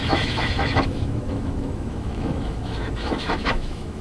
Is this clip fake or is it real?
fake